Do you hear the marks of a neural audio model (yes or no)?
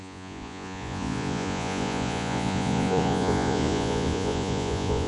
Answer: yes